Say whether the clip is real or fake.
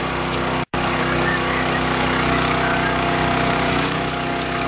fake